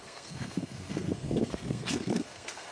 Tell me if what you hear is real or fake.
fake